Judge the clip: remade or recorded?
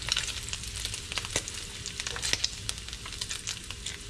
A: recorded